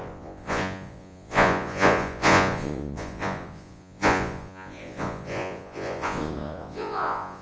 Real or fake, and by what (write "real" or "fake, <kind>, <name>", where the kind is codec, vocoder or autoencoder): fake, vocoder, Vocos